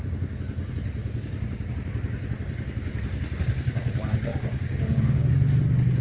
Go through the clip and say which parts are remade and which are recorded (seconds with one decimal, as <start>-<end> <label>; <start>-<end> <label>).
0.0-1.0 recorded; 1.0-1.7 remade; 1.7-4.3 recorded; 4.3-5.3 remade; 5.3-6.0 recorded